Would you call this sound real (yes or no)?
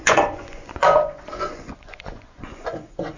no